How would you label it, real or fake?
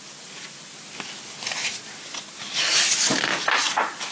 real